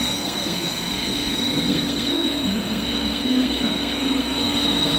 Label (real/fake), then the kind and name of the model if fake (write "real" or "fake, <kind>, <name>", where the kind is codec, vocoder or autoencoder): fake, codec, SNAC